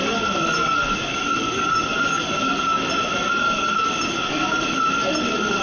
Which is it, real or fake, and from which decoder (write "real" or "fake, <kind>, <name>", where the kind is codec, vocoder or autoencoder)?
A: real